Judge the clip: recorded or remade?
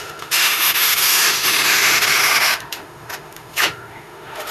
remade